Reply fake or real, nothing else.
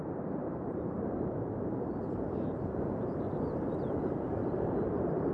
fake